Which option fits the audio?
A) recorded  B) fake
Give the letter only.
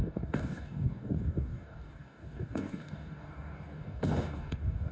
B